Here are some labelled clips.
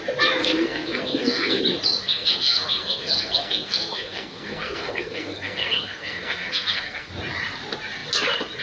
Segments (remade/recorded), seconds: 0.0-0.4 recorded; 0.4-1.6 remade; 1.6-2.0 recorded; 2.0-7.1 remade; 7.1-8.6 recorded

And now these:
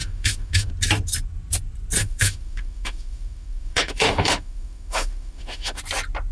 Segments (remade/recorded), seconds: 0.0-0.7 remade; 0.7-2.0 recorded; 2.0-5.8 remade; 5.8-6.3 recorded

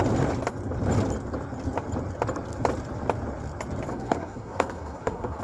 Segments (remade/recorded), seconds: 0.0-3.9 recorded; 3.9-5.4 remade

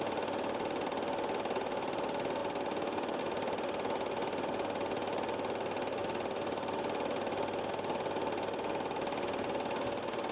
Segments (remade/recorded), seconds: 0.0-10.3 recorded

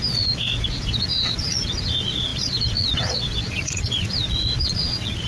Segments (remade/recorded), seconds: 0.0-5.3 remade

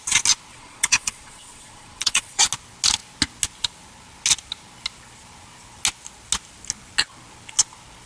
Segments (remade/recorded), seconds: 0.0-0.5 recorded; 0.5-2.5 remade; 2.5-8.1 recorded